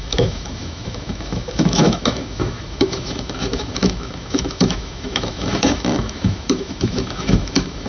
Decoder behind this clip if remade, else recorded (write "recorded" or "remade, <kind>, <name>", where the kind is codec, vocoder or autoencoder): remade, autoencoder, DAC-VAE